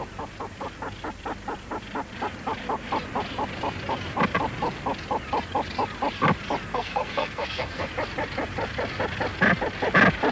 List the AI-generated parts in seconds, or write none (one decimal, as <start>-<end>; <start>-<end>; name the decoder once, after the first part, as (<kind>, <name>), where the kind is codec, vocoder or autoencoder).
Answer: 6.7-7.9 (codec, SNAC)